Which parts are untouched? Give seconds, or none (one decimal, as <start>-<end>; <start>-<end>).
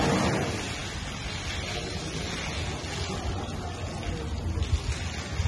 0.0-5.5